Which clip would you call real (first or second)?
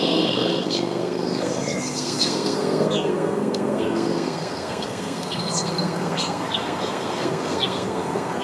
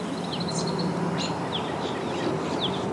second